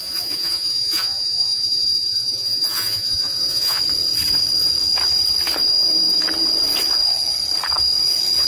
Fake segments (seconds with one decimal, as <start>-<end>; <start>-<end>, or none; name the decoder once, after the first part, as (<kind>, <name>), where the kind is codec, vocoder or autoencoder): 0.0-3.8 (vocoder, Vocos)